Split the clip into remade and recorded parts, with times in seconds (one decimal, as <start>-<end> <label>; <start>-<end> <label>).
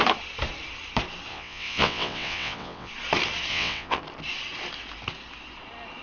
0.0-1.3 recorded; 1.3-2.9 remade; 2.9-3.5 recorded; 3.5-4.0 remade; 4.0-6.0 recorded